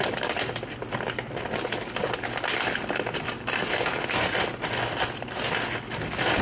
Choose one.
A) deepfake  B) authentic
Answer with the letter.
B